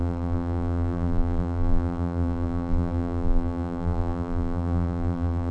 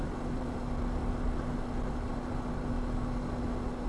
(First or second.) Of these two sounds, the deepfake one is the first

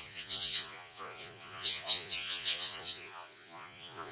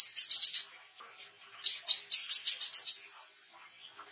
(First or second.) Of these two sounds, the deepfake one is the first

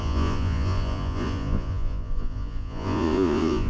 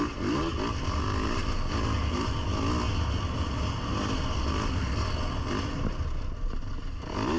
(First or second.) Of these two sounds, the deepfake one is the first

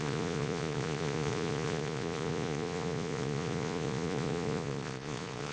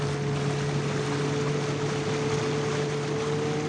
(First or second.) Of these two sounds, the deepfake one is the first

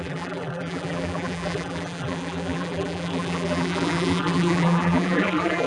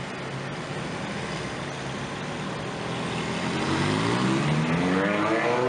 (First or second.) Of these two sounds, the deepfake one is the first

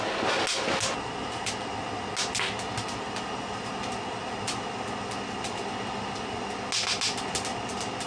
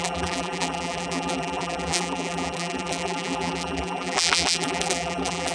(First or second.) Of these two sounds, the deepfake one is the second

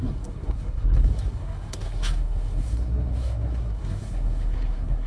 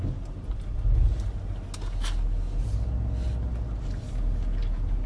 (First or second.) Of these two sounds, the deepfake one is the first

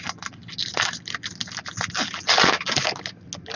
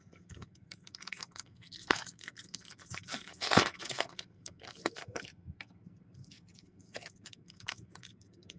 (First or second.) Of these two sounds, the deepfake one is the second